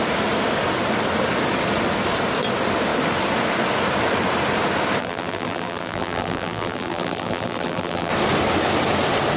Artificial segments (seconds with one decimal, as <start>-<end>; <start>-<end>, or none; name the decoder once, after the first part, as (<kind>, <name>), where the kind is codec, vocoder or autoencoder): 5.0-8.1 (vocoder, BigVGAN v2)